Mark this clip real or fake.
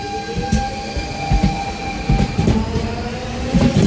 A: real